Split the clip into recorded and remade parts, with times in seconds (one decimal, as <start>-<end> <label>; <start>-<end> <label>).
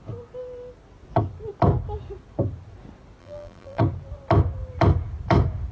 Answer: 0.0-3.2 recorded; 3.2-3.8 remade; 3.8-5.7 recorded